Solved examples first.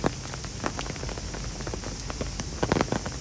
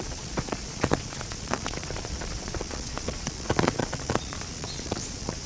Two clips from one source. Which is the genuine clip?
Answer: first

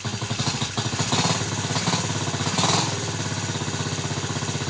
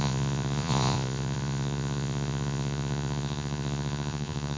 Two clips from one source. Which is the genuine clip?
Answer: first